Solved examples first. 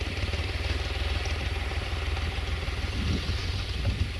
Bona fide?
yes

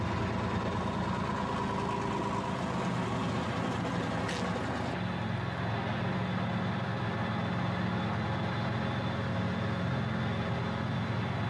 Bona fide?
yes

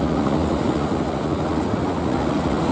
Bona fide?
no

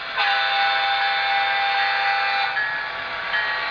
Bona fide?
yes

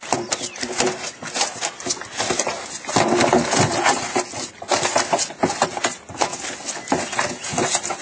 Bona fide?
yes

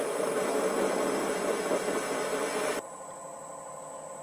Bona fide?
yes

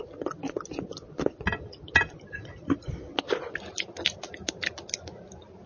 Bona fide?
yes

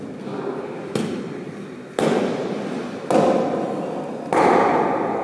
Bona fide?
yes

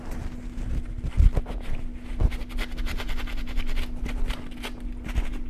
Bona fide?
yes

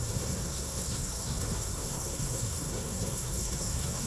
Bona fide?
no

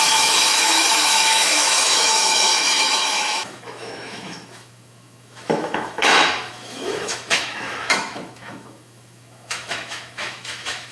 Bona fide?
no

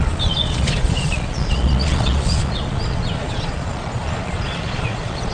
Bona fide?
no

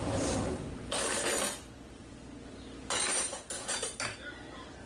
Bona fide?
yes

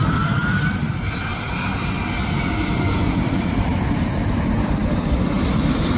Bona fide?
no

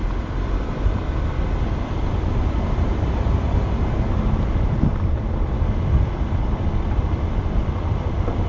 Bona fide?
no